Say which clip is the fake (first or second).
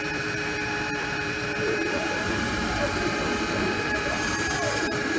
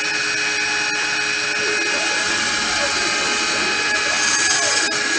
first